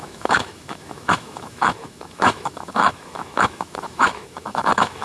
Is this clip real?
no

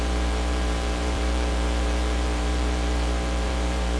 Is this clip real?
no